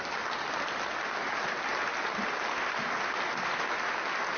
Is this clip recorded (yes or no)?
yes